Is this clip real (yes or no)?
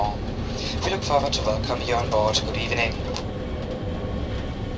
yes